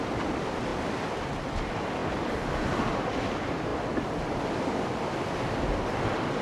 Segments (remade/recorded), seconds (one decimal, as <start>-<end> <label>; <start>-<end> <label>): 0.0-6.4 recorded